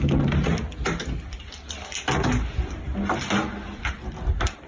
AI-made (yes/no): no